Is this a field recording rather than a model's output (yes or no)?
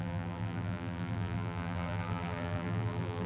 no